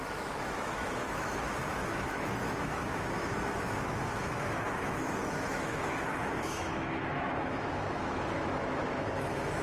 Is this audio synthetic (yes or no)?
yes